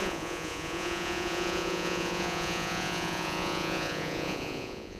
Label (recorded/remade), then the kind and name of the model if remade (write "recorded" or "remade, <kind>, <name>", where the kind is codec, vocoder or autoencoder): remade, vocoder, Vocos